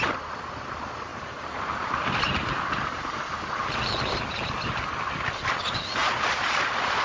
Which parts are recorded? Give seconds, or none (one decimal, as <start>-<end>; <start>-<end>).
0.0-1.1; 4.9-6.0